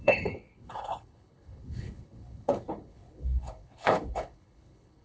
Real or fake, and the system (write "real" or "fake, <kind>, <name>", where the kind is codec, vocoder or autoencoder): fake, codec, HILCodec